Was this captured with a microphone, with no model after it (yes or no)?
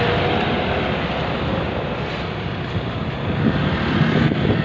yes